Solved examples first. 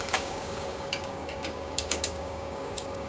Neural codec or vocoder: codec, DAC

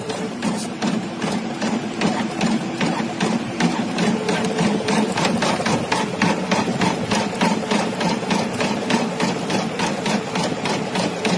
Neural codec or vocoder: vocoder, BigVGAN v2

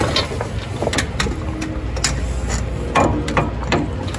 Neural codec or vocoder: none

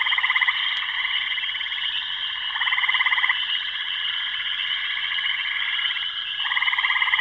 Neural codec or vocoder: vocoder, Vocos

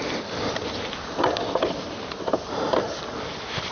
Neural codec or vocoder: none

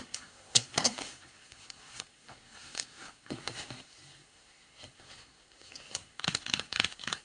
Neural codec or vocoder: codec, SNAC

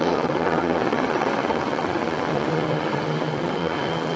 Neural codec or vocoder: vocoder, WaveNeXt